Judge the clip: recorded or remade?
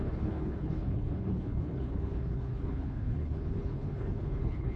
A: remade